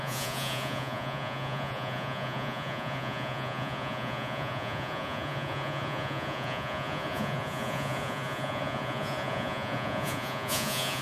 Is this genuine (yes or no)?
no